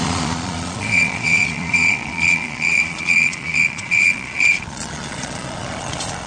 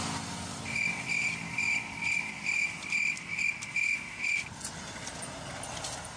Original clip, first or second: second